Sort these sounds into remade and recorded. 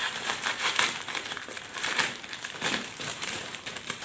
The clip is remade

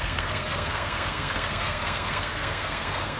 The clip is remade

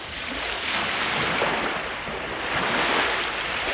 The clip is recorded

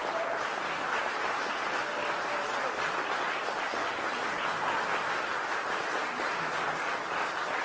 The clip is recorded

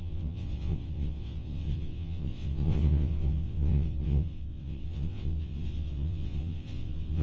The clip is remade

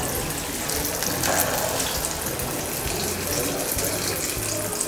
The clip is recorded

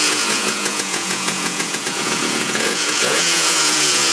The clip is remade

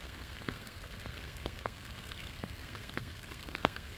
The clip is remade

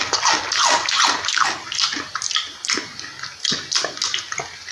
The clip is recorded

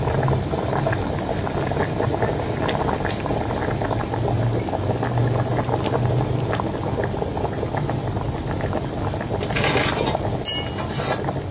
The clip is recorded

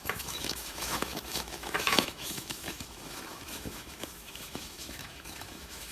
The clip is remade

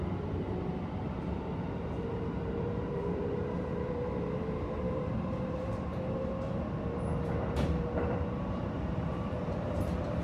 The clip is remade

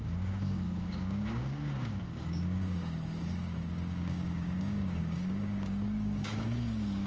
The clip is remade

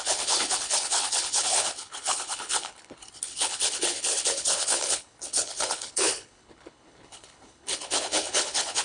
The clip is remade